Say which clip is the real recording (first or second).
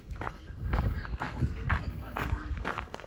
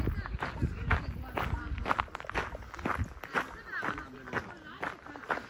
second